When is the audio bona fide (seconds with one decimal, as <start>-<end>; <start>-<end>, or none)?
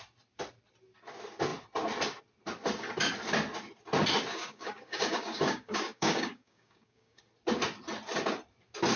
0.0-4.3; 7.2-9.0